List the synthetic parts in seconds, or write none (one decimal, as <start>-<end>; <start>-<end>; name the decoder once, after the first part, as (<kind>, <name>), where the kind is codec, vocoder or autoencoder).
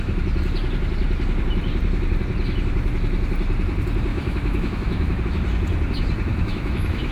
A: 4.1-5.2 (autoencoder, DAC-VAE); 6.3-7.1